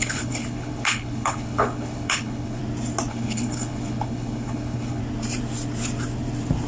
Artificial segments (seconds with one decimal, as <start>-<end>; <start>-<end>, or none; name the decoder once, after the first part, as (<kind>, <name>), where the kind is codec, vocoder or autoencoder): 0.0-2.6 (codec, HILCodec); 3.1-5.0